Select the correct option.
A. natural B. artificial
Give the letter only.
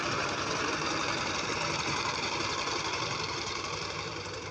B